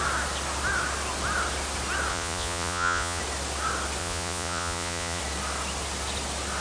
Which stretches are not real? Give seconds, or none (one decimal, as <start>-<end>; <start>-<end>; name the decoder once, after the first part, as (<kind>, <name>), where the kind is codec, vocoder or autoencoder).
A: 2.1-3.2 (vocoder, Vocos); 4.0-5.2